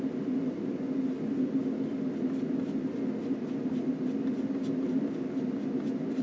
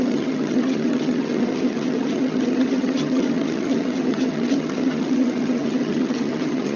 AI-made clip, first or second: second